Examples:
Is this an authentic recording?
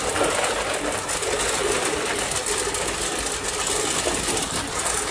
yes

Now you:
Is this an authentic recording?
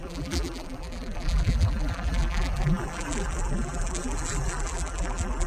no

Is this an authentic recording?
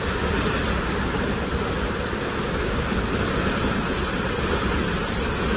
yes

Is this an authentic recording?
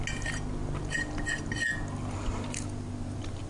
yes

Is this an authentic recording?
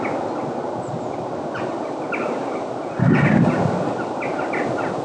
yes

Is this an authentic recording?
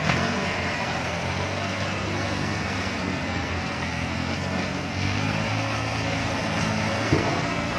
no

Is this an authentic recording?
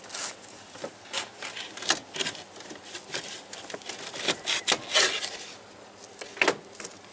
yes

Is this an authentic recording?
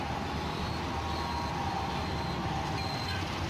yes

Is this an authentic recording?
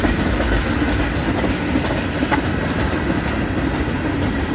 yes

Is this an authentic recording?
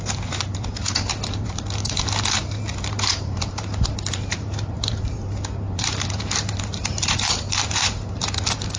no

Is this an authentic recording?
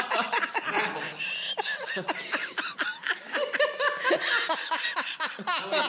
yes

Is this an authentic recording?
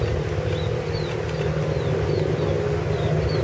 yes